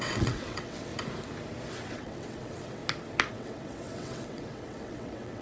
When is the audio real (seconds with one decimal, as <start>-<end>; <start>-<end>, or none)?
0.9-1.7; 2.8-3.3